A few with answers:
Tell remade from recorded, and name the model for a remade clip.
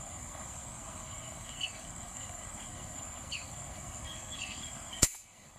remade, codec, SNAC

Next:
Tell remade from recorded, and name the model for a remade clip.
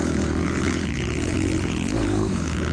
remade, codec, HILCodec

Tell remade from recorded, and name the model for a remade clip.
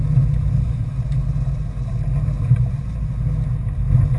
recorded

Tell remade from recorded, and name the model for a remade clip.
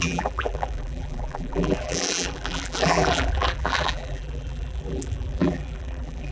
remade, vocoder, BigVGAN v2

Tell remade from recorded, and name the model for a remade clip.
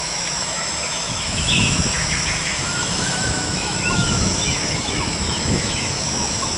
remade, autoencoder, DAC-VAE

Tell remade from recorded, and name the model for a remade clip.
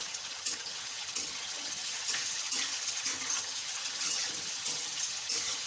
remade, vocoder, HiFi-GAN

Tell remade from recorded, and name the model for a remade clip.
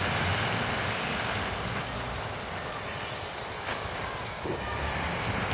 recorded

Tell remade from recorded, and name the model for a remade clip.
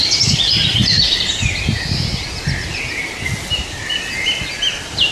recorded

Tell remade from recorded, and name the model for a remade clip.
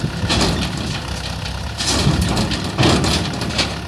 recorded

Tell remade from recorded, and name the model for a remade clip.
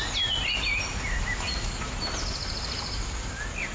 recorded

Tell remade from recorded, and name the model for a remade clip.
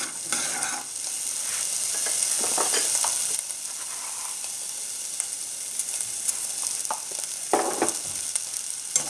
recorded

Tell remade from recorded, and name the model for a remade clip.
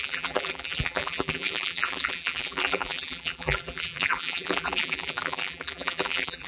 remade, vocoder, BigVGAN v2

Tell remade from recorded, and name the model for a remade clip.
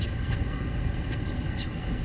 remade, codec, SNAC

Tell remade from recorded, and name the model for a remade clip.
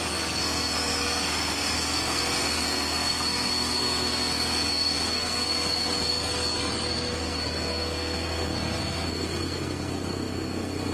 remade, codec, SNAC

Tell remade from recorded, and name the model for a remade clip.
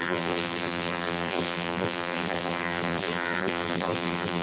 remade, vocoder, BigVGAN v2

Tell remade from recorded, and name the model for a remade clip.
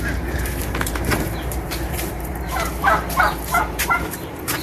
remade, vocoder, BigVGAN v2